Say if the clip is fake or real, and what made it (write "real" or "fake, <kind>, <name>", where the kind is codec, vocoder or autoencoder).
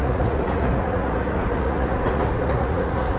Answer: fake, vocoder, Vocos